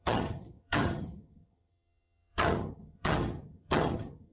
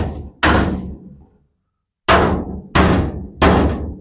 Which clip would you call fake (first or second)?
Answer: first